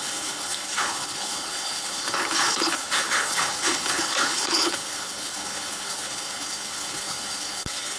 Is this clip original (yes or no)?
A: no